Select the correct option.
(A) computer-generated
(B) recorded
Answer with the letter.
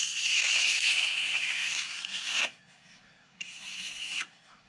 A